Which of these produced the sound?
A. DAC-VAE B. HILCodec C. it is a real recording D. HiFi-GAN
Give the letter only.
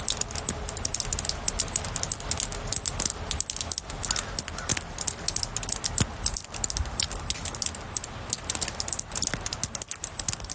C